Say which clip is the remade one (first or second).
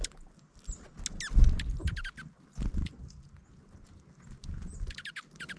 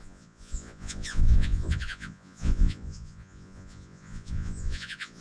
second